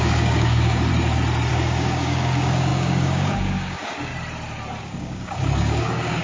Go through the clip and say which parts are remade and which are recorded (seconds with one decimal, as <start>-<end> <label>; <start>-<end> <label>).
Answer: 0.0-0.9 remade; 0.9-1.5 recorded; 1.5-4.1 remade; 4.1-4.8 recorded; 4.8-6.2 remade